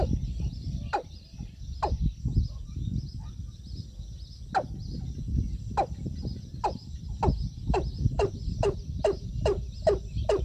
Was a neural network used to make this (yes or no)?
no